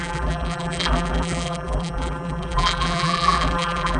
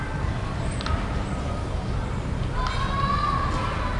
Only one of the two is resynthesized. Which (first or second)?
first